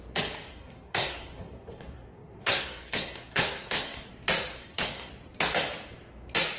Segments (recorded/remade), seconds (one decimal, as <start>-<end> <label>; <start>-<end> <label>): 0.0-0.5 recorded; 0.5-4.1 remade; 4.1-4.5 recorded; 4.5-5.1 remade; 5.1-6.6 recorded